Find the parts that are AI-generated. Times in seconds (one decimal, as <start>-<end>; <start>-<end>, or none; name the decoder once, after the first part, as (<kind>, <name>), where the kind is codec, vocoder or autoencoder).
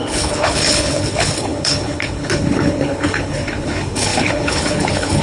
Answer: 0.0-5.2 (codec, HILCodec)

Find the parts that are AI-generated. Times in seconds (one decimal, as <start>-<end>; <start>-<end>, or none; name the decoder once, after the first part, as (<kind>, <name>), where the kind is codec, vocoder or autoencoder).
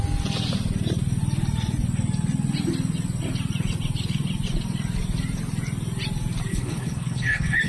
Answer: 6.5-7.7 (codec, HILCodec)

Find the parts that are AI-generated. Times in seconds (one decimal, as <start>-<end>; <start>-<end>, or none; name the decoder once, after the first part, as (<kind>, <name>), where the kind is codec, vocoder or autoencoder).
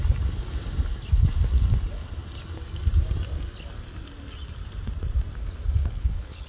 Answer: 5.8-6.5 (codec, HILCodec)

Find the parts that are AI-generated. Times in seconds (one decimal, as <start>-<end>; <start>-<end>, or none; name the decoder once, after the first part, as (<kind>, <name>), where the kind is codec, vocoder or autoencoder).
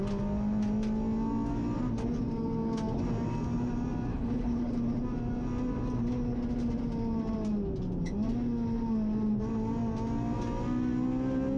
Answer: 4.1-4.7 (codec, HILCodec)